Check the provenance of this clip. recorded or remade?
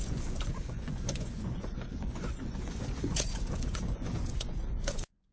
remade